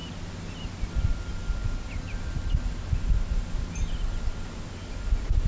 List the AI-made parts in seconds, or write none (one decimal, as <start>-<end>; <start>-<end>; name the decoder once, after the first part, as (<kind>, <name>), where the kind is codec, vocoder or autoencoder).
none